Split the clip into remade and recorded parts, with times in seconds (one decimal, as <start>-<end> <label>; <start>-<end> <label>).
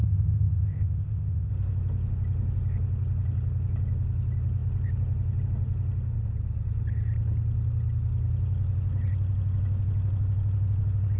0.0-1.5 remade; 1.5-11.2 recorded